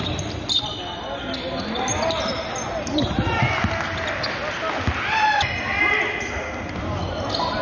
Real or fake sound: real